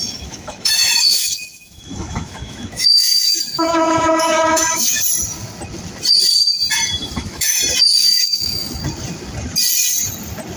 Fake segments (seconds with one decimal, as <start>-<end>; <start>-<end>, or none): 0.0-5.0; 7.0-7.6; 8.0-8.8